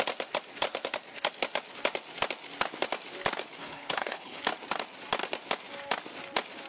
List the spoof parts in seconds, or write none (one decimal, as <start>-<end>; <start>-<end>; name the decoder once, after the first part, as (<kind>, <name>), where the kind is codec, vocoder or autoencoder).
3.6-4.4 (codec, HILCodec)